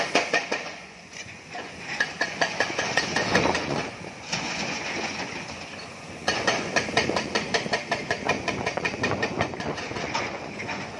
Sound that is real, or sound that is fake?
fake